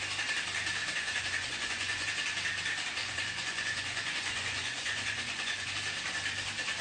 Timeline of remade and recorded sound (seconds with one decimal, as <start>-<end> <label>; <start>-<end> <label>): 0.0-0.8 recorded; 0.8-2.1 remade; 2.1-3.0 recorded; 3.0-5.7 remade; 5.7-6.8 recorded